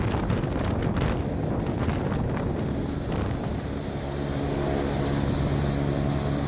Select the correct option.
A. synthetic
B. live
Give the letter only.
B